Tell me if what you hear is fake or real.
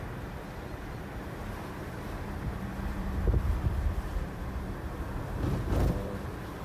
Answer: fake